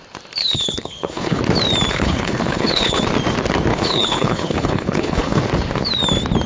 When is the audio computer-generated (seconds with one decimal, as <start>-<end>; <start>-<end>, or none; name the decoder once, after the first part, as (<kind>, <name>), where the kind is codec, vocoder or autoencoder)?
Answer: 0.4-1.4 (codec, HILCodec); 1.9-3.0; 3.7-5.4